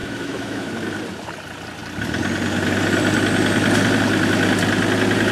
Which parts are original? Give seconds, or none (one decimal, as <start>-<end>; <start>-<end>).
0.7-5.3

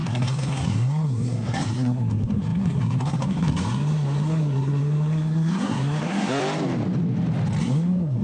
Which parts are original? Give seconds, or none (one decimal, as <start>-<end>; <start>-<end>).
6.4-7.6

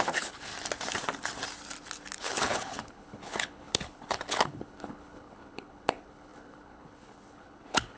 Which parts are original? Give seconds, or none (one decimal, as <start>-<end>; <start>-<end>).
0.5-2.2

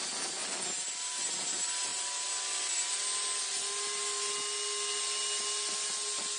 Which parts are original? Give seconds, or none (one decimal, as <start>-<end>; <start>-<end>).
0.0-6.4

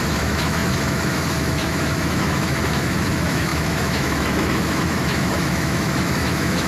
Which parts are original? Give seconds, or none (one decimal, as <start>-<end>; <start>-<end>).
none

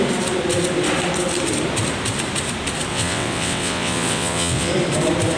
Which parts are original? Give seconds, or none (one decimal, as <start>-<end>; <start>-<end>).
0.0-2.9; 4.7-5.4

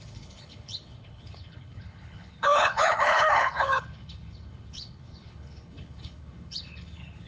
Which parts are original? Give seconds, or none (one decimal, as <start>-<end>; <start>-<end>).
none

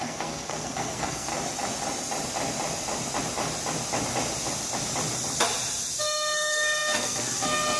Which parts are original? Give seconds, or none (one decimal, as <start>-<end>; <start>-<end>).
1.3-6.0